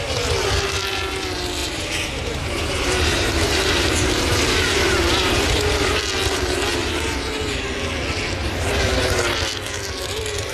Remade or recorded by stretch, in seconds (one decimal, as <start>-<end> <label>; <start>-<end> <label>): 0.0-1.6 recorded; 1.6-6.0 remade; 6.0-8.4 recorded; 8.4-9.2 remade; 9.2-10.5 recorded